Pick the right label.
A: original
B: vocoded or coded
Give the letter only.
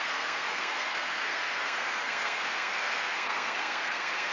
B